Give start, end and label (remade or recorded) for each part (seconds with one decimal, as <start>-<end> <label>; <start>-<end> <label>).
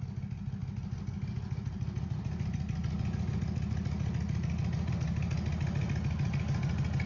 0.0-7.1 recorded